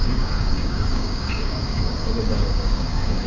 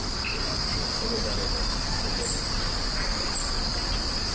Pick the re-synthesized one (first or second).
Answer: first